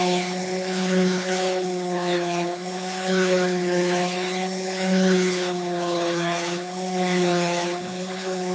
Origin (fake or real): fake